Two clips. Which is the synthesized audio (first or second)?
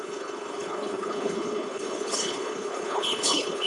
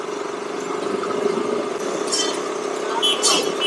first